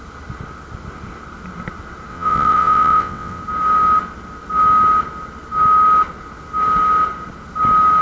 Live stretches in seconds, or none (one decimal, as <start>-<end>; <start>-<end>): 0.0-2.1; 3.4-8.0